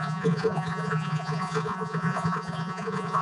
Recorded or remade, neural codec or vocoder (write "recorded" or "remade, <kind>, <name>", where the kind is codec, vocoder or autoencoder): remade, vocoder, Vocos